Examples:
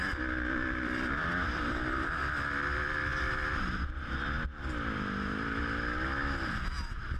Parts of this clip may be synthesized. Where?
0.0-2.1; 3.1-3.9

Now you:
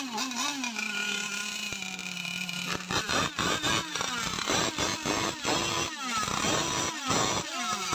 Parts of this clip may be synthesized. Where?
none

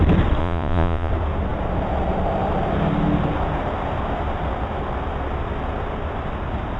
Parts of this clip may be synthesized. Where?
0.4-1.1

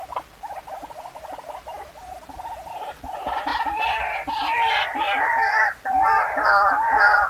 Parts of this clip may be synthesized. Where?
0.0-2.7; 3.5-5.3

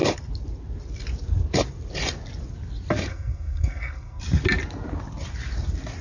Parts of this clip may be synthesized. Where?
3.1-4.2